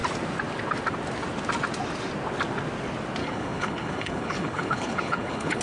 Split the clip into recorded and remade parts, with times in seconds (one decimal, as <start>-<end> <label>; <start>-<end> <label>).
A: 0.0-3.2 recorded; 3.2-5.6 remade